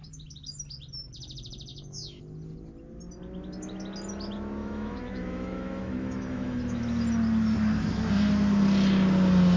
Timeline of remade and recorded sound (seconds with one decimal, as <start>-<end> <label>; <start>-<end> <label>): 0.0-1.7 recorded; 1.7-2.2 remade; 2.2-4.6 recorded; 4.6-6.8 remade; 6.8-9.6 recorded